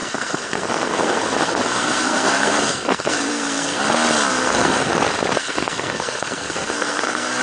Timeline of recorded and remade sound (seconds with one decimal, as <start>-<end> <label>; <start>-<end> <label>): 0.0-3.8 remade; 3.8-4.3 recorded; 4.3-4.9 remade; 4.9-5.4 recorded; 5.4-7.4 remade